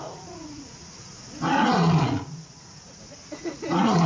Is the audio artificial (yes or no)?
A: yes